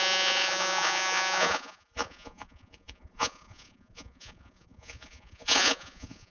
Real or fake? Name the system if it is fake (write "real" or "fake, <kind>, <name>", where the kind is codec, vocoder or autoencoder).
fake, vocoder, Vocos